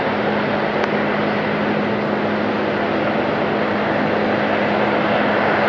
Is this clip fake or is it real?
real